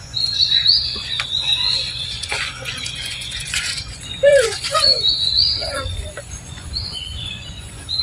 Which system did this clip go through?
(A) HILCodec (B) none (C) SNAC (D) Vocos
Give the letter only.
D